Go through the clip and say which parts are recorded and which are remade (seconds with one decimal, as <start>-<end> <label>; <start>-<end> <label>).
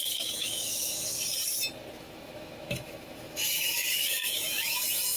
0.0-1.1 remade; 1.1-1.9 recorded; 1.9-5.2 remade